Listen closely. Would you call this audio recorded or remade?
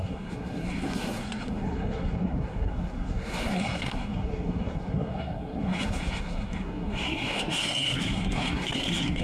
remade